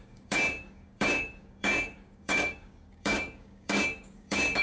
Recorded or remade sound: remade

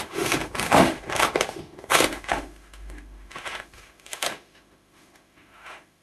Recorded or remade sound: remade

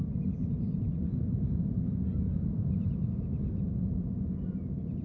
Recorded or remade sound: recorded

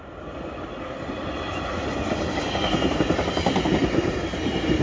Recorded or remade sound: recorded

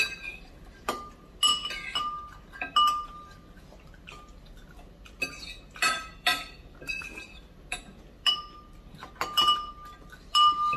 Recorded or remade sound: recorded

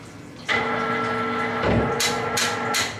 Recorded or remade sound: recorded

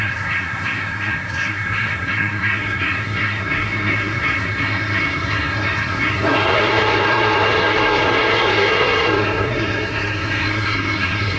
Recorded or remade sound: remade